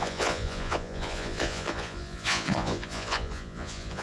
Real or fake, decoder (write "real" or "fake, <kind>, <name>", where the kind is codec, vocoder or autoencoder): fake, vocoder, Vocos